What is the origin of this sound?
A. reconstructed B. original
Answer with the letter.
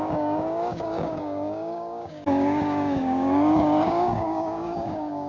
A